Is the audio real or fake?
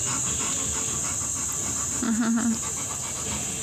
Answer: real